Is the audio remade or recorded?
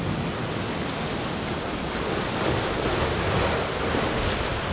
recorded